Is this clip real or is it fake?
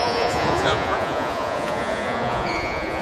fake